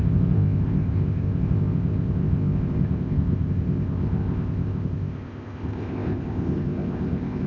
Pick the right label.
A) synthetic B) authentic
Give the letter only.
A